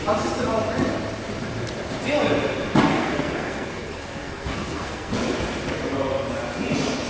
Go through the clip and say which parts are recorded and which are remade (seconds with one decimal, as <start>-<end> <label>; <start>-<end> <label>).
0.0-2.9 recorded; 2.9-5.1 remade; 5.1-7.1 recorded